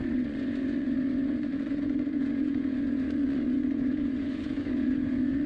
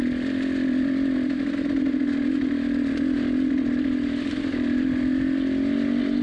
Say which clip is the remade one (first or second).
first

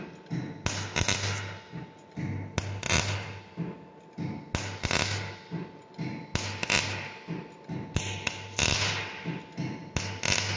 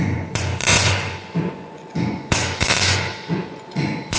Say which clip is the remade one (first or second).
second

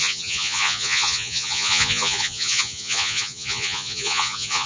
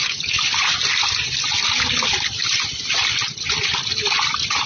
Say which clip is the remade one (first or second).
first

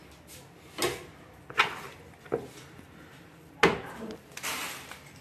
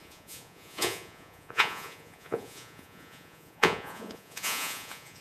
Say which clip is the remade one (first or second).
second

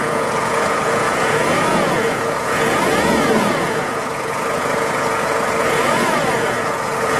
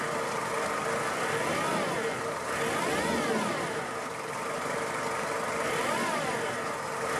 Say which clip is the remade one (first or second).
first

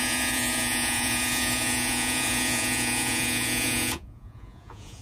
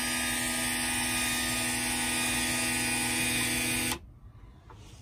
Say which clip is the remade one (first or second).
first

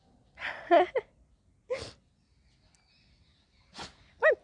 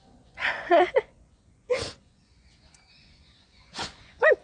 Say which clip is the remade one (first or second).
second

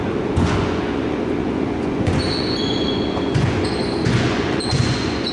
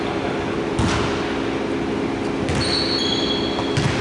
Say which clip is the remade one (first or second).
first